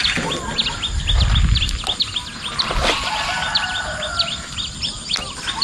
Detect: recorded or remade recorded